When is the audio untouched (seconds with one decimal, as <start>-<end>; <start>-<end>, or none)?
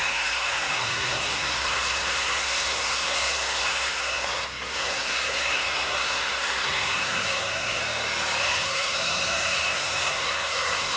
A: 7.8-8.4